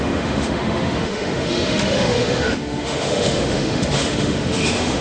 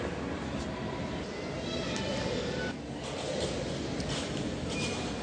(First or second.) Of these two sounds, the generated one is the first